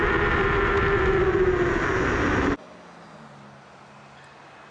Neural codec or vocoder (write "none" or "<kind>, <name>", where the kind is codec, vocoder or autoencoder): none